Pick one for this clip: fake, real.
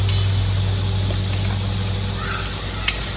real